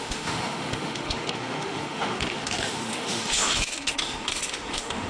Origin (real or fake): fake